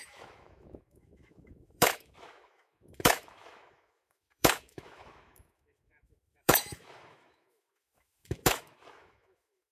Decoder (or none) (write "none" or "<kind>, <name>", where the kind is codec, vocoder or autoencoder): autoencoder, DAC-VAE